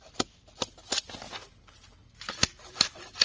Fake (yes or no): no